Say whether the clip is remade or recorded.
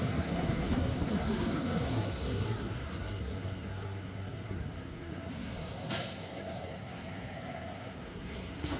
remade